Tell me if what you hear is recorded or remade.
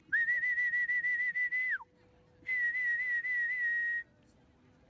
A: recorded